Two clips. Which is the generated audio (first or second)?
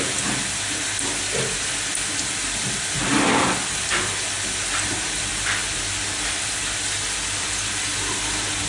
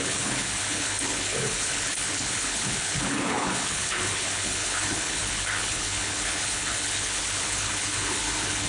second